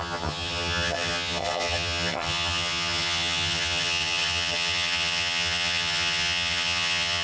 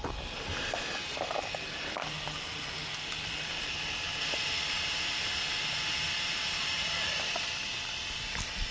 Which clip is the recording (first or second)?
second